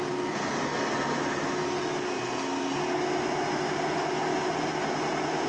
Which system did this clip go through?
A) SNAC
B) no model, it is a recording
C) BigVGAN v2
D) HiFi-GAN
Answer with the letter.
B